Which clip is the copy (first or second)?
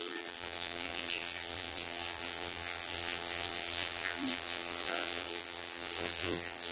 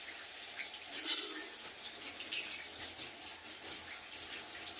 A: first